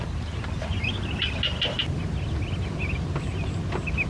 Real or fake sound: real